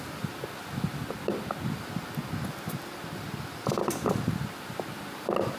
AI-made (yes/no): no